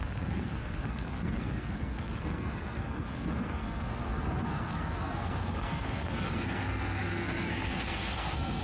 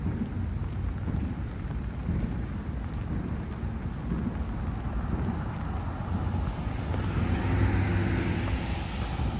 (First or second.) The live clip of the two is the second